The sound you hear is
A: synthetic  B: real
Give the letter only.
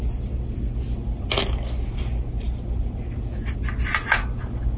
B